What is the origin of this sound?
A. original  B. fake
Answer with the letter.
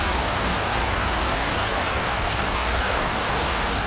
B